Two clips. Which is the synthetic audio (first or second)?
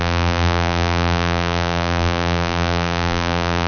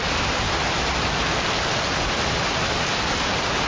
first